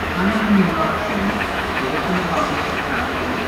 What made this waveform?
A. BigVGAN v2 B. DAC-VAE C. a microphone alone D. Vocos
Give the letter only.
B